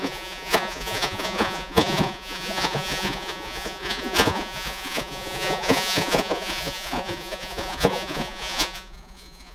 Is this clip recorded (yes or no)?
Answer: no